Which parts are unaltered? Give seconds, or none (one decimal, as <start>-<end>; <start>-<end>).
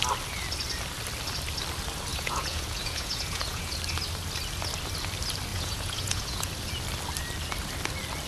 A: 0.0-2.1; 3.8-5.5; 6.5-8.3